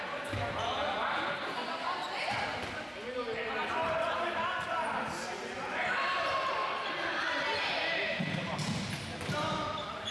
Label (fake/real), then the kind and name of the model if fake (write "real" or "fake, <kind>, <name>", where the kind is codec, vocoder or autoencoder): real